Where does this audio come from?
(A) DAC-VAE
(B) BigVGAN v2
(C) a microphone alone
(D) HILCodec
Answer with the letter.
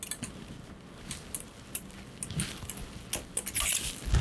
C